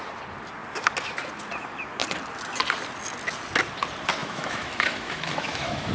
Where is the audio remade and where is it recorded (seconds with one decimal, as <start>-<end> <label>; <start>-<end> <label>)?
0.0-4.2 recorded; 4.2-5.9 remade